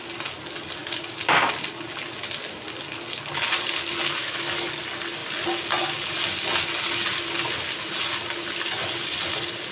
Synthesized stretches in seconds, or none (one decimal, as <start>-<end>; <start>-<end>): 4.2-4.7

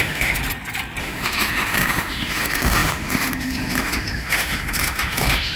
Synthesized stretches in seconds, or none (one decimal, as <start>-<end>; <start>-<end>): 0.0-0.4; 1.0-5.6

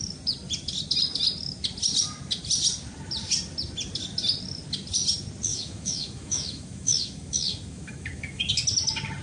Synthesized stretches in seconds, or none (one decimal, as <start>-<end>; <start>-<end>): 5.5-8.5

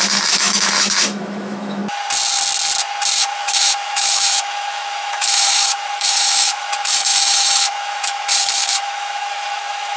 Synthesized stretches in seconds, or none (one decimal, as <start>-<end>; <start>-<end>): 0.0-1.8; 3.2-10.0

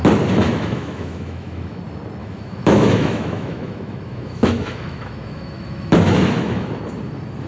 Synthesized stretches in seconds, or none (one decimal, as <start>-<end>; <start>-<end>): 0.4-1.8; 2.2-6.7

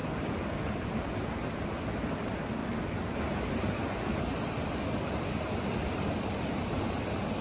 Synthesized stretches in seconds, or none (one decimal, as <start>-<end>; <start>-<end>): none